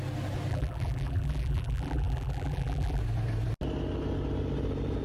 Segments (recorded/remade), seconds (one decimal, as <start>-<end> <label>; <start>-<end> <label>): 0.0-0.5 recorded; 0.5-3.0 remade; 3.0-5.0 recorded